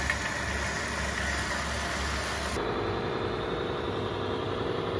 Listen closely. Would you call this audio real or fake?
real